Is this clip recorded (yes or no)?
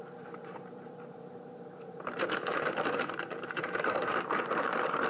no